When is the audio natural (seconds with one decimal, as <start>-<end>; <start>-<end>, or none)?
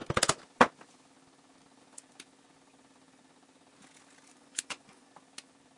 0.0-4.3; 5.1-5.8